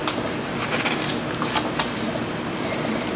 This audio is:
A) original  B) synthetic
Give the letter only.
A